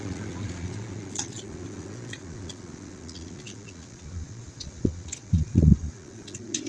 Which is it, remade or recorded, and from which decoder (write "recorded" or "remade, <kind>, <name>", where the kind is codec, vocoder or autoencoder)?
remade, vocoder, Vocos